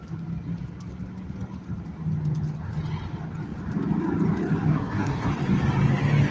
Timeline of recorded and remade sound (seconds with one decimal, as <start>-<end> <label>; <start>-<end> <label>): 0.0-4.7 recorded; 4.7-5.3 remade; 5.3-6.3 recorded